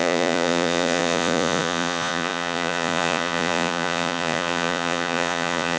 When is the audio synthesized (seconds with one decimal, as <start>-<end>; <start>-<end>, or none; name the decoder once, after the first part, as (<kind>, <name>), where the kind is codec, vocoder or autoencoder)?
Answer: 0.0-5.8 (vocoder, Vocos)